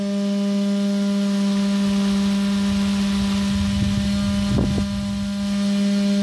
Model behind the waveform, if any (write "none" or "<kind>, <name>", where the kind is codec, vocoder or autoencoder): none